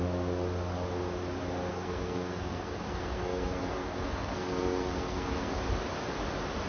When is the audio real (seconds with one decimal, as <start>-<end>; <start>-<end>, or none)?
0.0-1.7; 5.6-6.7